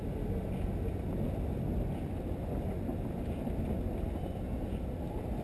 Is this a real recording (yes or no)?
yes